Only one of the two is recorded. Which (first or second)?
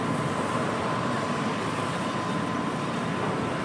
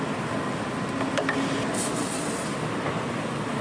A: second